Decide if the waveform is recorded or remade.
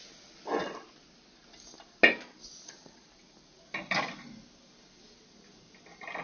recorded